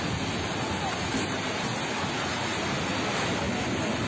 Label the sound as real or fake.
real